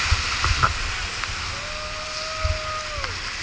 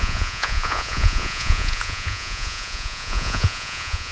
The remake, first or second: second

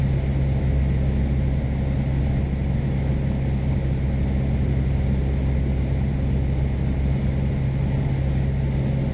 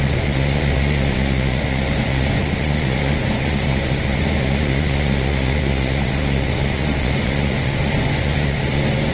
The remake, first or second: second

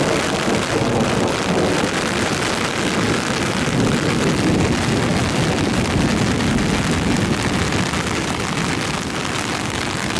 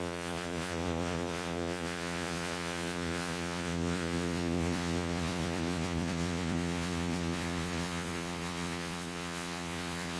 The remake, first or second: second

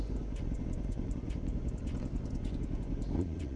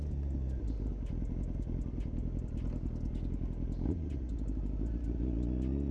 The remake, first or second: first